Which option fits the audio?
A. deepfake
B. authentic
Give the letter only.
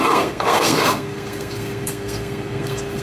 A